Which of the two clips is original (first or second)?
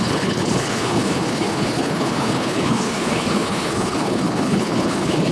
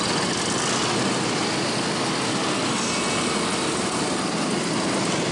second